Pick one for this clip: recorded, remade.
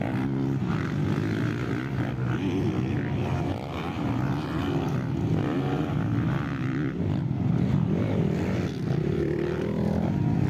recorded